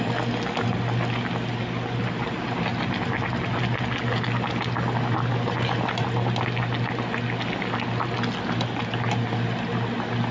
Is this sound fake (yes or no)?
no